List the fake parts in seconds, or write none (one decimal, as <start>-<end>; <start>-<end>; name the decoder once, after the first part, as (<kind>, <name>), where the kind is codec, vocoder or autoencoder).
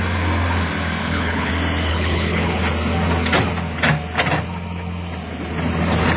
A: 1.0-1.5 (codec, HILCodec); 1.9-2.6